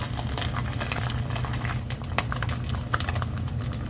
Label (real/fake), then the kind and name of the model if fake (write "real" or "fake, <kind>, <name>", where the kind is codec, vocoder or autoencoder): real